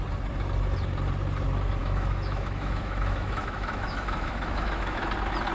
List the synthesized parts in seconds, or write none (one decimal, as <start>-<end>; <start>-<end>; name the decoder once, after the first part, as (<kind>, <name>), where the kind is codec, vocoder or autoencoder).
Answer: 1.8-5.1 (autoencoder, DAC-VAE)